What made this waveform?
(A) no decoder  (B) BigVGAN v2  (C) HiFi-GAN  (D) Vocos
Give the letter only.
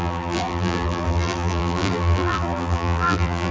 B